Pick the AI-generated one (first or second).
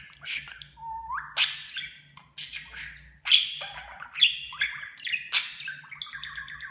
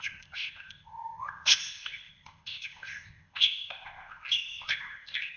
second